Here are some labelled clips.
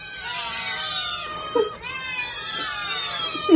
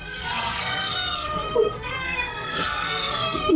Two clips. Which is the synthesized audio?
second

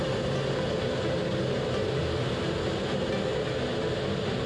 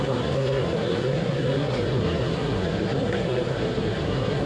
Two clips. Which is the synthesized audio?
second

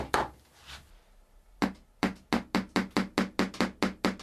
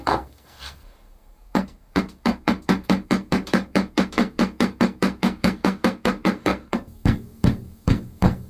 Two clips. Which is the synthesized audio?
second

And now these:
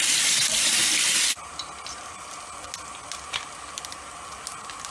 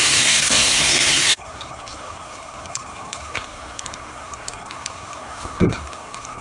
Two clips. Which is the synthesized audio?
second